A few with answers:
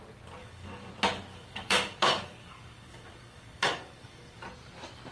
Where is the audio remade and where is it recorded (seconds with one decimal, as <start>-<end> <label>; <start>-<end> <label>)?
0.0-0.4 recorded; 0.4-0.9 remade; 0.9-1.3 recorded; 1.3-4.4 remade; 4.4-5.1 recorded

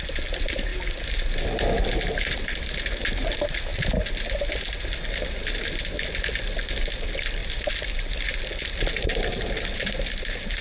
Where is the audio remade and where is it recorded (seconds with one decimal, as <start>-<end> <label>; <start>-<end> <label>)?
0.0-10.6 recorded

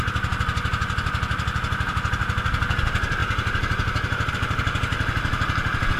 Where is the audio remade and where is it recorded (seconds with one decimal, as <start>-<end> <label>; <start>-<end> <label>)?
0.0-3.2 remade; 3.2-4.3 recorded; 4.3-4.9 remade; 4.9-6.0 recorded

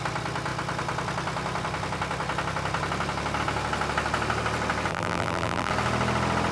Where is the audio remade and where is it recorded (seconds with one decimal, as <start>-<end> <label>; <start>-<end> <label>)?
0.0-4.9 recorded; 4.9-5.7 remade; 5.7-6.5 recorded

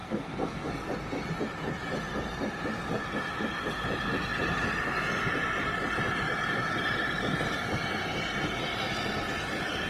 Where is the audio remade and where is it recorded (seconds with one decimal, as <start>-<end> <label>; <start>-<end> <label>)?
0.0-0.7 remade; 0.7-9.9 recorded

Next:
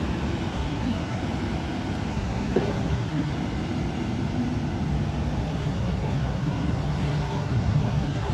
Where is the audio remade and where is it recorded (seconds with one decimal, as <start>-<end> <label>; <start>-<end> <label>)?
0.0-0.5 recorded; 0.5-1.2 remade; 1.2-2.1 recorded; 2.1-3.3 remade; 3.3-5.4 recorded; 5.4-8.3 remade

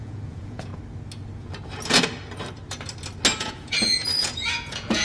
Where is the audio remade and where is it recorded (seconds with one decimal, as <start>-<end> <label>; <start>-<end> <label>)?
0.0-0.7 remade; 0.7-3.4 recorded; 3.4-5.0 remade